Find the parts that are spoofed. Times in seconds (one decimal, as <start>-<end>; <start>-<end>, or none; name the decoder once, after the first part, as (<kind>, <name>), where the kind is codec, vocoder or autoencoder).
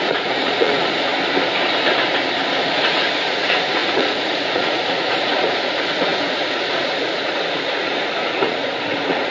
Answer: 0.0-1.1 (vocoder, Vocos); 2.6-9.3